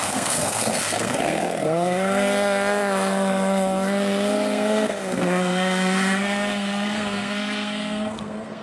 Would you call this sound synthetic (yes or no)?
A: yes